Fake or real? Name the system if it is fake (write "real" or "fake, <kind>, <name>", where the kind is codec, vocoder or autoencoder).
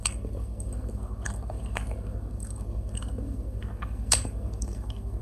fake, codec, SNAC